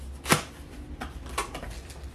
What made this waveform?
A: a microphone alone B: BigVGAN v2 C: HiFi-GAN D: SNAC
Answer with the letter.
A